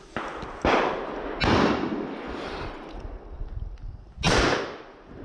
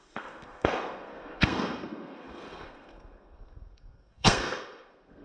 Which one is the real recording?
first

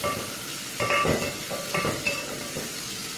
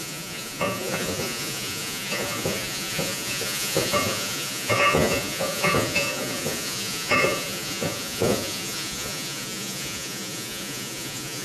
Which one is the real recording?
first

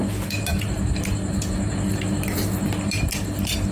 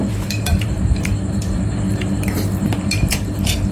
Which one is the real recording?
first